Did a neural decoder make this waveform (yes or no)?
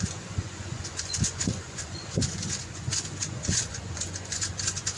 yes